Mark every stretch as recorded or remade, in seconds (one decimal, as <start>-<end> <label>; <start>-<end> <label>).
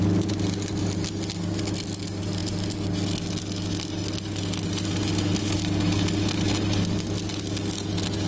0.0-8.3 recorded